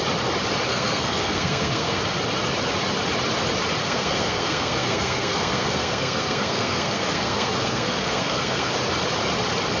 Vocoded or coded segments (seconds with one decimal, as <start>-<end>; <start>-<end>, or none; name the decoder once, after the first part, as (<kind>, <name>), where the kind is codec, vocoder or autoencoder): 0.7-2.0 (codec, SNAC); 3.8-8.7